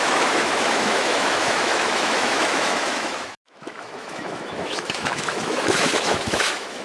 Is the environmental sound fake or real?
fake